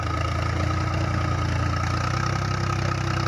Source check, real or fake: real